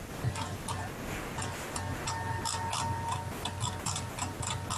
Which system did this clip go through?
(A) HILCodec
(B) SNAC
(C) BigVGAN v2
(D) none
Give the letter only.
D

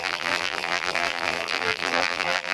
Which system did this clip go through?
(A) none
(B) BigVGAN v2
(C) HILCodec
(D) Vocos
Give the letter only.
B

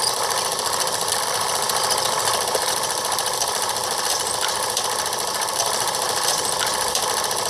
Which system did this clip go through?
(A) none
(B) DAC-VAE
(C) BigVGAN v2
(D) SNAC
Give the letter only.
C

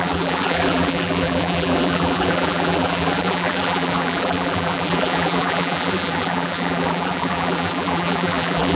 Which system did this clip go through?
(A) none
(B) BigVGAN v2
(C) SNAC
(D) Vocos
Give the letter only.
B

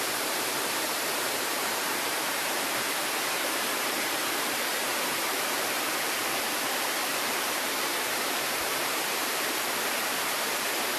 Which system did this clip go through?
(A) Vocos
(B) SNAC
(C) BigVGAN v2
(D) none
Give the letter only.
C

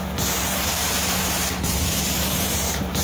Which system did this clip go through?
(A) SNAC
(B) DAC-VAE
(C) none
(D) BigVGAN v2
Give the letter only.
D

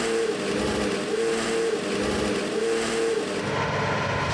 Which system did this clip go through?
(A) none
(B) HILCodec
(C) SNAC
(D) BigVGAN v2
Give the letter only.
A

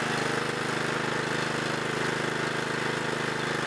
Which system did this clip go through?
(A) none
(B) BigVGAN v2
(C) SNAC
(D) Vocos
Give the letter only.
A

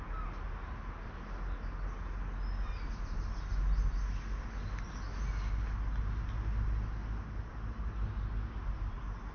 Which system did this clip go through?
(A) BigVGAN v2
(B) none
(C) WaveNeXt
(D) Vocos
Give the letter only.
B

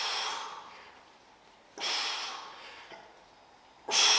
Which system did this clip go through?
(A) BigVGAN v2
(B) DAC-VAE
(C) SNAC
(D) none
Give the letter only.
D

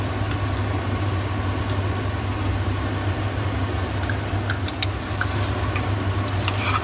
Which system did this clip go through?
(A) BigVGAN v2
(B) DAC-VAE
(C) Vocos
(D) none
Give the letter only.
D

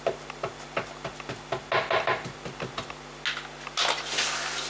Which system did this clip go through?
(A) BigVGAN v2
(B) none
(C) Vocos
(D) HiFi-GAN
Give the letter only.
B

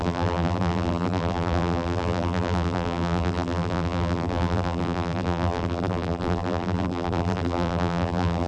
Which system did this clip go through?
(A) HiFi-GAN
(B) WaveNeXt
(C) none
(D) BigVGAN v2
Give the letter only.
D